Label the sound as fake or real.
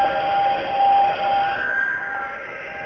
real